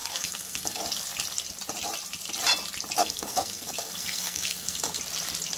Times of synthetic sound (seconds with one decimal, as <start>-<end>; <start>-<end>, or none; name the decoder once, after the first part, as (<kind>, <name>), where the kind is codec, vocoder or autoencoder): 0.0-0.8 (codec, SNAC); 3.0-5.0